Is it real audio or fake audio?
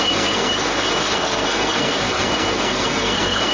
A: fake